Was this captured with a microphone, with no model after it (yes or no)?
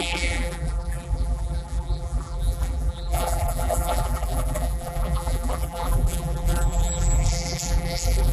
no